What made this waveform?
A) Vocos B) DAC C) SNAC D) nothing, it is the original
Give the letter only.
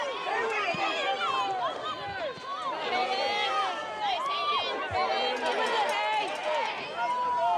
D